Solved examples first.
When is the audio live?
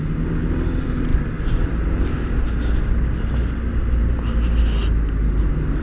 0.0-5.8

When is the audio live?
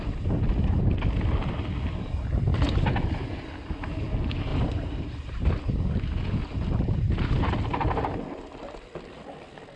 0.0-4.5; 5.5-9.8